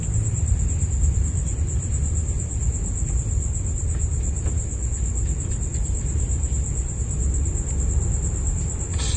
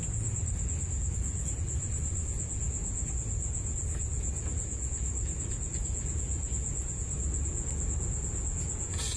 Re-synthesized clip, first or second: second